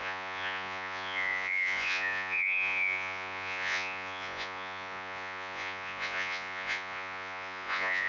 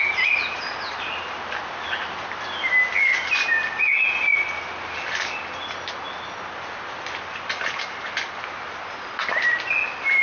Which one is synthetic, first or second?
first